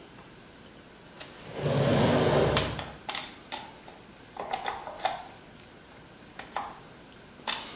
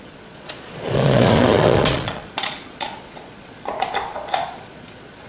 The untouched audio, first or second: first